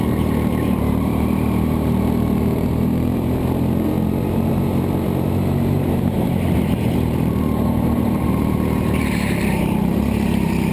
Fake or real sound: fake